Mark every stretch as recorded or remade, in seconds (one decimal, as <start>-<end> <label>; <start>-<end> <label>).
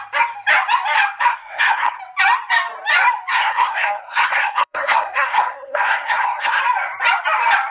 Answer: 0.0-1.3 recorded; 1.3-2.0 remade; 2.0-3.3 recorded; 3.3-6.6 remade; 6.6-7.7 recorded